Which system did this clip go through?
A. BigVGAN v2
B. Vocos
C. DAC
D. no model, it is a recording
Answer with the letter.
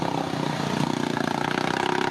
D